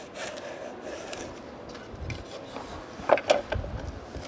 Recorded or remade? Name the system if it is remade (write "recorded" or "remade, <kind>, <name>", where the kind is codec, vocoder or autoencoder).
recorded